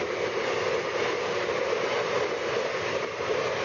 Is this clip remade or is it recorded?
recorded